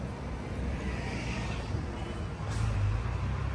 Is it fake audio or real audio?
real